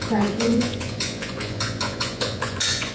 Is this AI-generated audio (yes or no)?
yes